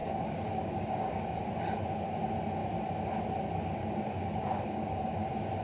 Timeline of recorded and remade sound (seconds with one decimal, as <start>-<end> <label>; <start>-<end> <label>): 0.0-1.4 remade; 1.4-3.8 recorded; 3.8-5.1 remade; 5.1-5.6 recorded